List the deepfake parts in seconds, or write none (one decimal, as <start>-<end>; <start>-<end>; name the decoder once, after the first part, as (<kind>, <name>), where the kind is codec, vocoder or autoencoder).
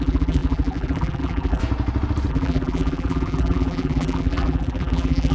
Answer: 0.0-1.6 (vocoder, BigVGAN v2); 2.3-5.3